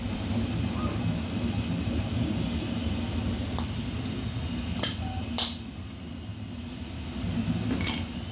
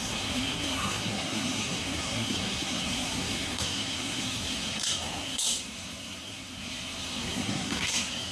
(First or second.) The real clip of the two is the first